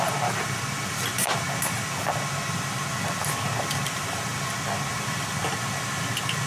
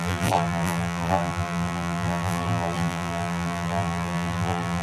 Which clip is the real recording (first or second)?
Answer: first